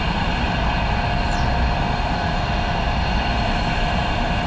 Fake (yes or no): no